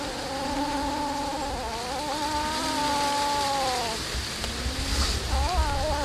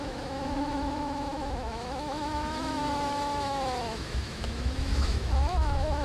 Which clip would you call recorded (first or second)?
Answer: first